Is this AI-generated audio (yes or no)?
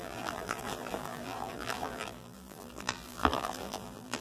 yes